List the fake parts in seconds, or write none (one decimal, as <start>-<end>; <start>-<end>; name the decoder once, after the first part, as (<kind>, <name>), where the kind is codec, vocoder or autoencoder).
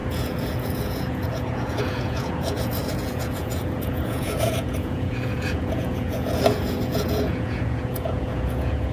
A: 0.0-8.9 (vocoder, Vocos)